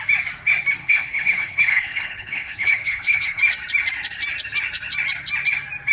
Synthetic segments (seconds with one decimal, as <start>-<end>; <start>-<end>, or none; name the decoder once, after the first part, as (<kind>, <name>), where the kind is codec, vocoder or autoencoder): 0.8-3.4 (codec, HILCodec)